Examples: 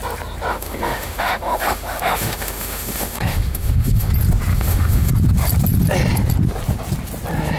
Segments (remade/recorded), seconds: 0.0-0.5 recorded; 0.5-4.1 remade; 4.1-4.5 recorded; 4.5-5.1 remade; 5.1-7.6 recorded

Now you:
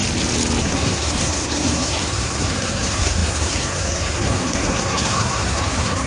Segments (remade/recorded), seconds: 0.0-0.6 recorded; 0.6-6.1 remade

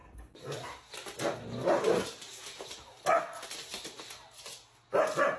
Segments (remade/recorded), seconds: 0.0-5.4 recorded

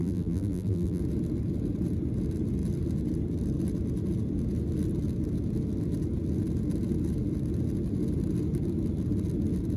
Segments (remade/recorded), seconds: 0.0-1.0 remade; 1.0-9.8 recorded

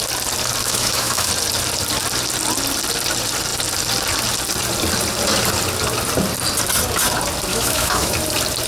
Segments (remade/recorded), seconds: 0.0-0.6 recorded; 0.6-1.3 remade; 1.3-7.5 recorded; 7.5-8.1 remade; 8.1-8.7 recorded